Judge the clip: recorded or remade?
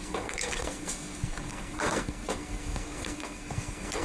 remade